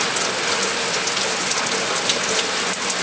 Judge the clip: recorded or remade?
recorded